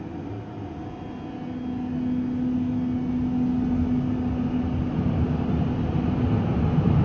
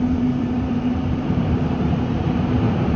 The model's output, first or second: second